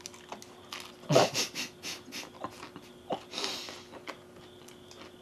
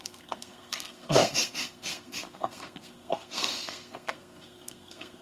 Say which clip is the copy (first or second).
second